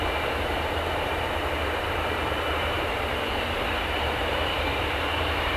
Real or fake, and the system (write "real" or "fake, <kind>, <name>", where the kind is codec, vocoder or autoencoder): fake, vocoder, BigVGAN v2